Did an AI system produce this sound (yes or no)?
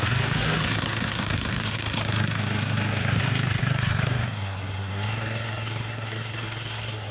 yes